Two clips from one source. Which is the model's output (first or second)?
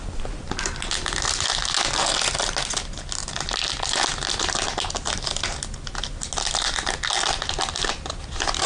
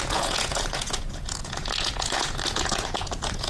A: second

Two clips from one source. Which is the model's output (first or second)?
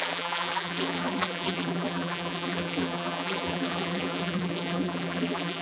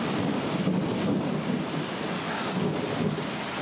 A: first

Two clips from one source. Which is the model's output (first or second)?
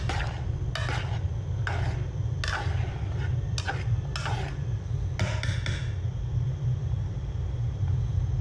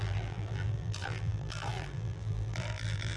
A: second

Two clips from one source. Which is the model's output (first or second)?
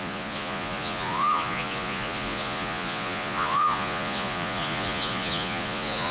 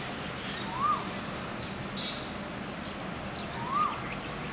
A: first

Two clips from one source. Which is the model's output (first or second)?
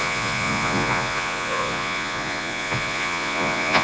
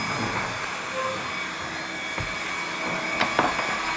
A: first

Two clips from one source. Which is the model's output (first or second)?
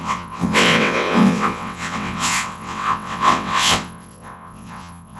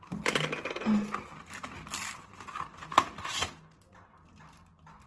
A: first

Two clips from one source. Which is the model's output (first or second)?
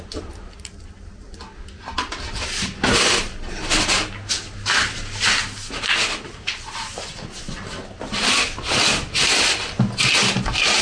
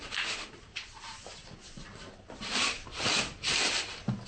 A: second